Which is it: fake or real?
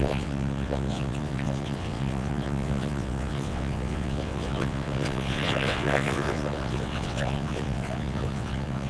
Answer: fake